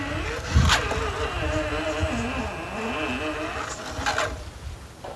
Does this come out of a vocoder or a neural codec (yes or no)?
no